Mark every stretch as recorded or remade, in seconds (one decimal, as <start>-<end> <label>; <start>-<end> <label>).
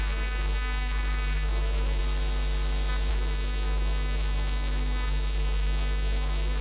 0.0-2.0 remade; 2.0-3.1 recorded; 3.1-6.6 remade